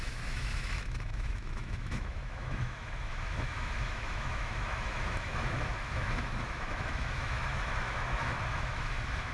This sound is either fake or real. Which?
fake